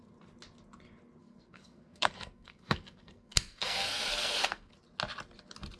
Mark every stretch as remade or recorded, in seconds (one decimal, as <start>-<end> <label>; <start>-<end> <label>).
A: 0.0-1.2 recorded; 1.2-4.7 remade; 4.7-5.8 recorded